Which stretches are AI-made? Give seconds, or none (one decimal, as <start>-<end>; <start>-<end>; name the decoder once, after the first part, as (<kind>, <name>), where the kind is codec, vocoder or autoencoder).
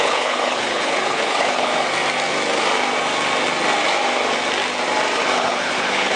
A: 0.0-1.7 (codec, HILCodec); 5.2-6.2